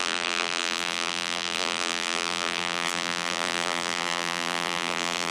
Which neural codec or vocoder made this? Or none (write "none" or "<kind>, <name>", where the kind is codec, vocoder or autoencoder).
vocoder, BigVGAN v2